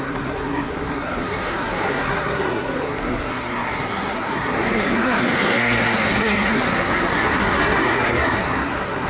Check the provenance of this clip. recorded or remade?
remade